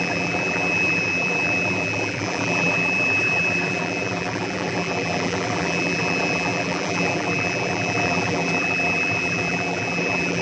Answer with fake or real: fake